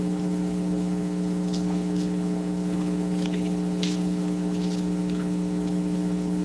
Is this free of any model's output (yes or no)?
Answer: no